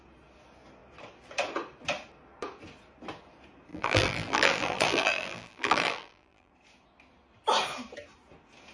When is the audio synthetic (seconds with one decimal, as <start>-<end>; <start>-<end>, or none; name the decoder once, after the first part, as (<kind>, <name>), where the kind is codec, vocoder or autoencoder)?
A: 3.7-6.5 (vocoder, BigVGAN v2)